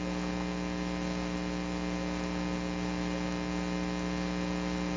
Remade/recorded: recorded